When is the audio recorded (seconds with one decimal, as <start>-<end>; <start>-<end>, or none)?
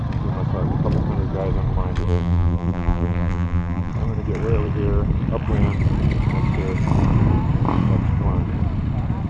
0.0-2.0; 3.9-9.3